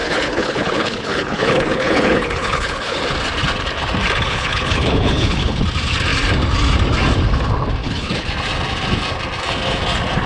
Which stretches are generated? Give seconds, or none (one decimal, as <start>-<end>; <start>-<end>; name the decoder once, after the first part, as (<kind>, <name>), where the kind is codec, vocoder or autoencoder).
0.0-3.0 (codec, HILCodec); 4.3-5.6; 7.8-8.3